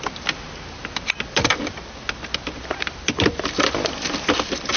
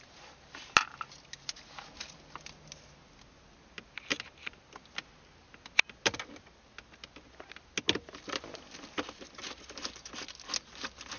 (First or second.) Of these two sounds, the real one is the second